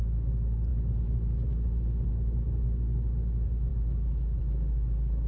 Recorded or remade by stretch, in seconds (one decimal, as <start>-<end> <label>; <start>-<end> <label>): 0.0-5.3 recorded